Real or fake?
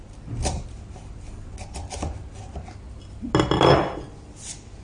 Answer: real